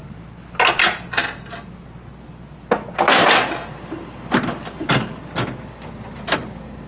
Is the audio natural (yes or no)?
yes